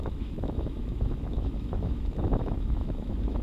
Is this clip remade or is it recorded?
remade